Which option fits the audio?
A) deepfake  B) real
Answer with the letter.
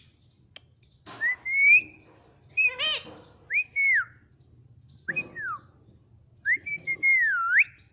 B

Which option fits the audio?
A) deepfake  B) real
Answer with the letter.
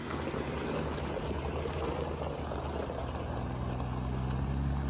B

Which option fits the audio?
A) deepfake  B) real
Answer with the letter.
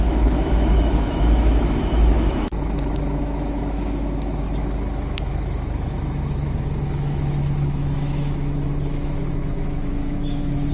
A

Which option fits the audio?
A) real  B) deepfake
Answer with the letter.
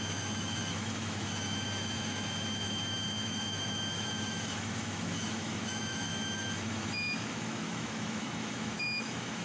B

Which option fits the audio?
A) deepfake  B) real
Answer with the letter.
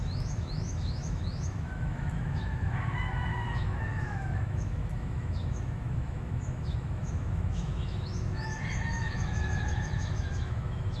A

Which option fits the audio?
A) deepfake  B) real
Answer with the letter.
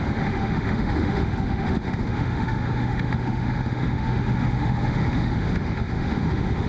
A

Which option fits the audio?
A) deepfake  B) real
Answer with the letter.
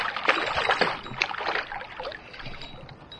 B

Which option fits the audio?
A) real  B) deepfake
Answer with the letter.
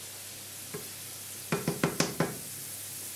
A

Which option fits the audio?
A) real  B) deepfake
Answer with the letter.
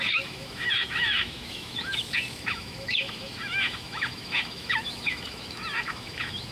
B